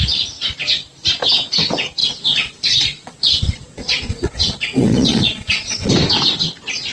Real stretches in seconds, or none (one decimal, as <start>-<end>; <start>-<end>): 0.0-2.0; 5.9-6.9